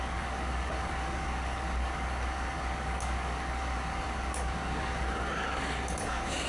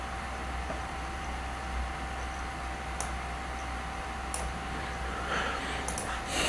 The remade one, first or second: first